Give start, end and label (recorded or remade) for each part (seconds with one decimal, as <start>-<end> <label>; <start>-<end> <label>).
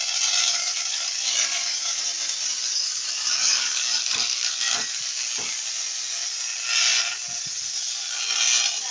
0.0-0.4 recorded; 0.4-2.0 remade; 2.0-2.7 recorded; 2.7-5.0 remade; 5.0-8.9 recorded